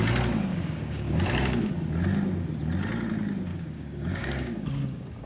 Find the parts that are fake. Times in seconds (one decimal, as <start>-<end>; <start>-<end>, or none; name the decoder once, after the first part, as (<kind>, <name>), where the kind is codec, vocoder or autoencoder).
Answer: 0.5-1.7 (codec, DAC); 3.5-5.3

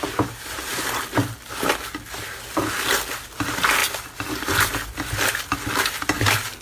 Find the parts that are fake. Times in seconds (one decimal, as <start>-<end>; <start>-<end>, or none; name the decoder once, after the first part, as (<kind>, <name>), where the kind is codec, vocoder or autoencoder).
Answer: 3.8-4.3 (vocoder, BigVGAN v2)

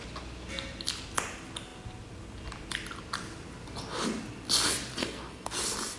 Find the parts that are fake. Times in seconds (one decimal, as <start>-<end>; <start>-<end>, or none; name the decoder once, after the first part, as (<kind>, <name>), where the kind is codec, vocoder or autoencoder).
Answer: 5.0-5.6 (codec, SNAC)

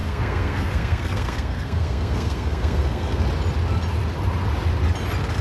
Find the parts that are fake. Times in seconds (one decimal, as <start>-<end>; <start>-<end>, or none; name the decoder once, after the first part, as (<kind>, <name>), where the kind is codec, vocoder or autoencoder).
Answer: 0.0-3.2 (codec, SNAC)

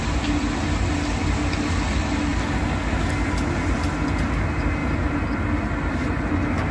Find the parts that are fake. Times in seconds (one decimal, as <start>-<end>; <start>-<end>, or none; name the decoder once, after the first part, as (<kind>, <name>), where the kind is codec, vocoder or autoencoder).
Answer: none

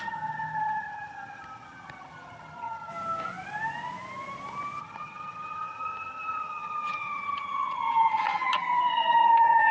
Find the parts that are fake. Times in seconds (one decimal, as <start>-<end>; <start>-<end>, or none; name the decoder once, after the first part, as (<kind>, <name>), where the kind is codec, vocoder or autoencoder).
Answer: 0.0-2.9 (vocoder, HiFi-GAN); 4.8-9.7

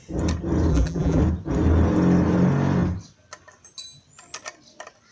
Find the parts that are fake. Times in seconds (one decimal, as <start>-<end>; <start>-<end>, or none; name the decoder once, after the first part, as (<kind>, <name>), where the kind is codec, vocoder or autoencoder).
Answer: 0.7-1.2 (vocoder, BigVGAN v2)

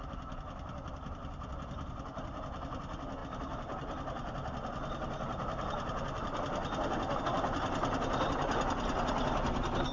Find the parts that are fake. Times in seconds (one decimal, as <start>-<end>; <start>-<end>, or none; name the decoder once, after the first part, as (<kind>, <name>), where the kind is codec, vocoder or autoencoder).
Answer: none